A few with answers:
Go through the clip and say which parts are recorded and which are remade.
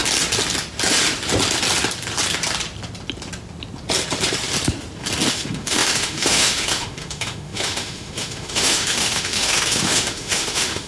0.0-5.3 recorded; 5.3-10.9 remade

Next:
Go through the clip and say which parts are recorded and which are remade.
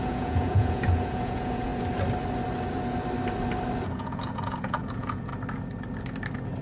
0.0-1.7 remade; 1.7-3.8 recorded; 3.8-5.3 remade; 5.3-6.6 recorded